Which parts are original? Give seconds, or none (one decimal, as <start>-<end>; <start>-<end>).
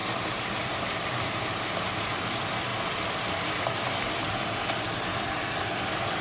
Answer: 2.7-3.3